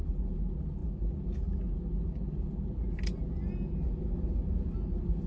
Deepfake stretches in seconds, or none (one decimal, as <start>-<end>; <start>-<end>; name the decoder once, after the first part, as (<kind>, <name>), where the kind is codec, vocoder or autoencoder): none